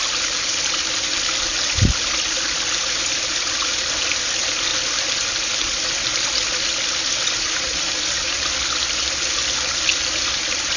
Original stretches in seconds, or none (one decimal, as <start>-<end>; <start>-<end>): 0.0-4.7; 5.3-7.7; 8.5-10.8